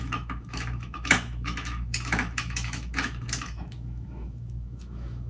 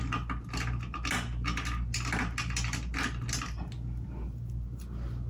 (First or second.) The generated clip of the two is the first